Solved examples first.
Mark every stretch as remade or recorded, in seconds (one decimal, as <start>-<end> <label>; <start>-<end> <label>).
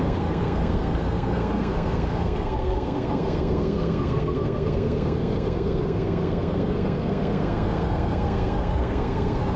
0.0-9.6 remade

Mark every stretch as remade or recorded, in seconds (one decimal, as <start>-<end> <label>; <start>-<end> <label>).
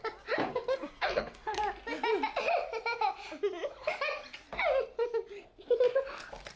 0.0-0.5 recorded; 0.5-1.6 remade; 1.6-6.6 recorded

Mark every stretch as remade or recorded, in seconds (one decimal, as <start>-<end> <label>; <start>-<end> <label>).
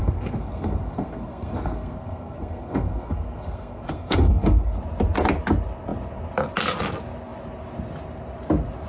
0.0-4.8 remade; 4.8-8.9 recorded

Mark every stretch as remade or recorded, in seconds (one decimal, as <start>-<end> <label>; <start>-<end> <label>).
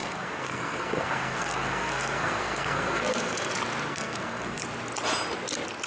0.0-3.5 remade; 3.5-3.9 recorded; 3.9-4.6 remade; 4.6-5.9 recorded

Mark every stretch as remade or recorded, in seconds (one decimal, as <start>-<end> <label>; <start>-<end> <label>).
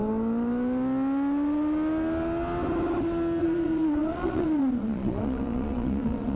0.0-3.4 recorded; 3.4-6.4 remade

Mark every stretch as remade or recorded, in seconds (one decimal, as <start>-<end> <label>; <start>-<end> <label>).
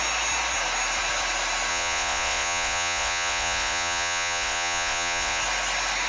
0.0-1.7 recorded; 1.7-5.4 remade; 5.4-6.1 recorded